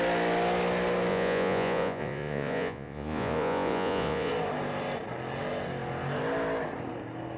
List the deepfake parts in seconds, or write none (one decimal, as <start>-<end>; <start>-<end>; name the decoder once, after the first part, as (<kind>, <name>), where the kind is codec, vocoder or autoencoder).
1.1-4.3 (vocoder, Vocos)